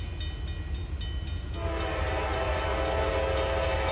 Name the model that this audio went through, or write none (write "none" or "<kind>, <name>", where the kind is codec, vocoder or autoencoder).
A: none